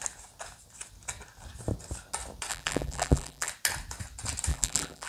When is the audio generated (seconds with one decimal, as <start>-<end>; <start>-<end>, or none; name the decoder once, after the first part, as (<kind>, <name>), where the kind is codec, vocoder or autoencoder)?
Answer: 2.5-3.5 (vocoder, BigVGAN v2); 4.5-5.1